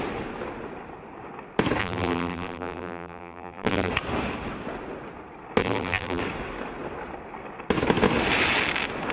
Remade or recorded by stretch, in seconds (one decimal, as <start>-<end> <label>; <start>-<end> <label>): 0.0-1.8 recorded; 1.8-3.9 remade; 3.9-5.6 recorded; 5.6-6.2 remade; 6.2-9.1 recorded